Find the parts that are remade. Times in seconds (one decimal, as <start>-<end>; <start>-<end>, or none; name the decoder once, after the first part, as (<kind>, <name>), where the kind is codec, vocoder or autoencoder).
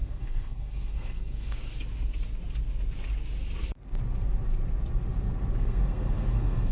0.0-1.6 (codec, SNAC); 5.6-6.7